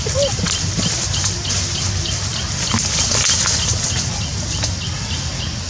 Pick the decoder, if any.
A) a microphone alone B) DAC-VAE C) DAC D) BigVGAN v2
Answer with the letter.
A